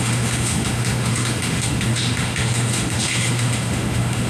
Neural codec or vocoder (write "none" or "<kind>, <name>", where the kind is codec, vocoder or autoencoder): autoencoder, DAC-VAE